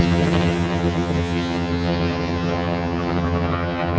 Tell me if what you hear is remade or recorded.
remade